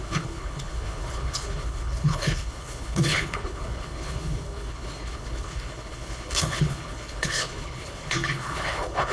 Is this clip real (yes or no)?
no